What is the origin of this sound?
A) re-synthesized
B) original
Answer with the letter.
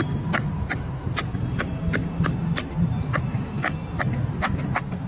B